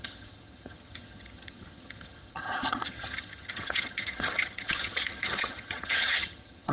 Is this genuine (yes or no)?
no